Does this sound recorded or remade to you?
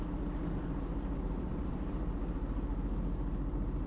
recorded